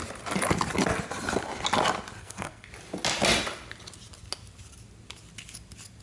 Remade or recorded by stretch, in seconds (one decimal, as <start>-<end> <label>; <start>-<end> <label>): 0.0-2.2 recorded; 2.2-2.7 remade; 2.7-6.0 recorded